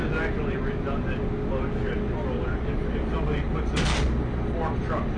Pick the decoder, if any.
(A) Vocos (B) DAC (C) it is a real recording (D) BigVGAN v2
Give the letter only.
C